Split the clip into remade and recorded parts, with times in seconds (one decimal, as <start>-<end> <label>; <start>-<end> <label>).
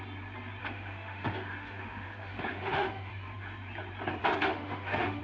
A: 0.0-0.6 recorded; 0.6-3.1 remade; 3.1-4.2 recorded; 4.2-5.2 remade